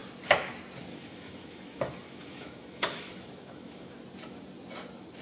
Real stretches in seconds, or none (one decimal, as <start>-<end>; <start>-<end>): 0.0-0.9; 4.0-5.2